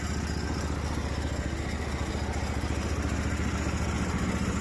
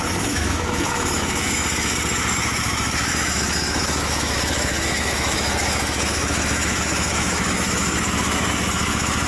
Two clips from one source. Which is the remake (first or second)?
second